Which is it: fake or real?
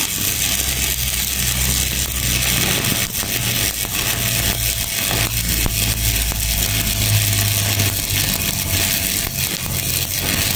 real